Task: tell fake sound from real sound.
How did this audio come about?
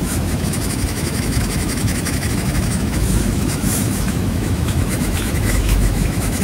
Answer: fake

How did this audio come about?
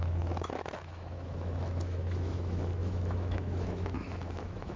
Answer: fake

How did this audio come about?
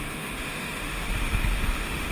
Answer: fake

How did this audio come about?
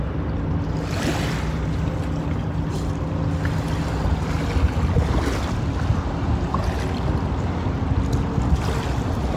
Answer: real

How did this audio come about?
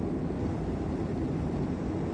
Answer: real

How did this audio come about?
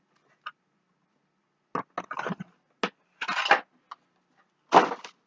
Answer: real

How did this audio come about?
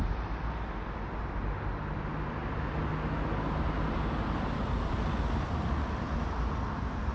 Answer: real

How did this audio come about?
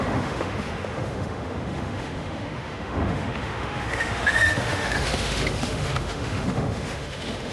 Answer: fake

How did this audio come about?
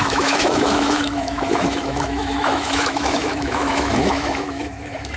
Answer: fake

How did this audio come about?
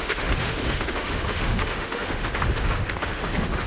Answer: fake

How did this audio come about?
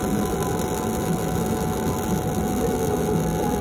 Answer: real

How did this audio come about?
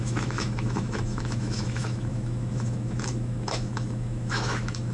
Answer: fake